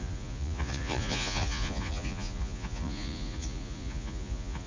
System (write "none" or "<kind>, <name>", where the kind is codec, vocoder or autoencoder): vocoder, Vocos